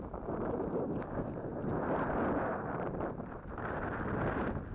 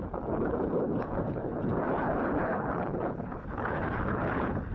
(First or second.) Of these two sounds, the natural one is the first